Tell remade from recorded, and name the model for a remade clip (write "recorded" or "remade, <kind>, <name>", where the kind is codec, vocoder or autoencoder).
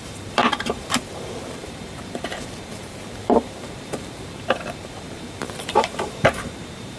remade, vocoder, BigVGAN v2